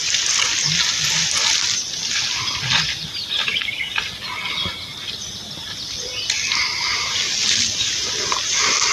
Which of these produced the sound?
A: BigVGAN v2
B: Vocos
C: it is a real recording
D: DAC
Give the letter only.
C